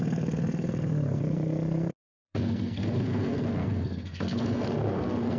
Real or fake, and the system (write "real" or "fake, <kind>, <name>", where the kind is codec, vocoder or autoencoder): fake, codec, SNAC